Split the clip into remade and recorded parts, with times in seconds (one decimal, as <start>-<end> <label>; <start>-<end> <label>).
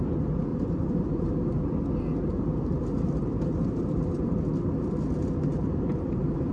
0.0-0.5 recorded; 0.5-1.3 remade; 1.3-3.3 recorded; 3.3-4.3 remade; 4.3-5.5 recorded; 5.5-6.5 remade